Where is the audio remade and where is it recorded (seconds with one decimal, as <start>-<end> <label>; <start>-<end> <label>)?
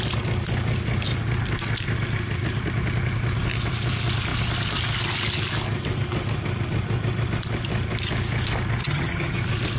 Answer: 0.0-8.8 recorded; 8.8-9.4 remade; 9.4-9.8 recorded